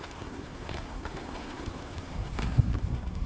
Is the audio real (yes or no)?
no